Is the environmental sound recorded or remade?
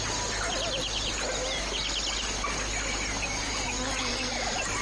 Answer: recorded